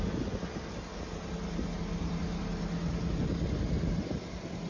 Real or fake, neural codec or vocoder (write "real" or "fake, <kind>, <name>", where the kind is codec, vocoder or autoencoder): real